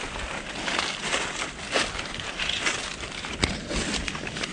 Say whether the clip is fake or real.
real